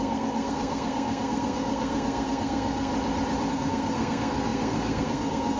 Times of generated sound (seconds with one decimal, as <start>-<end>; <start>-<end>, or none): 0.0-2.9; 3.5-5.6